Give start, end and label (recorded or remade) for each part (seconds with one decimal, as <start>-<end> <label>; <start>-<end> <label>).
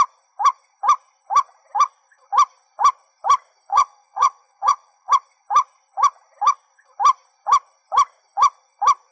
0.0-3.7 recorded; 3.7-5.1 remade; 5.1-9.1 recorded